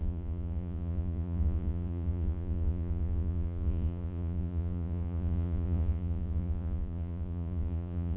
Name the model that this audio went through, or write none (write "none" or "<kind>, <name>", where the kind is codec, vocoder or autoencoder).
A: vocoder, Vocos